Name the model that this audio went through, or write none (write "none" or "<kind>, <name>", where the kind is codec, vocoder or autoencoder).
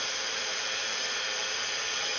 vocoder, BigVGAN v2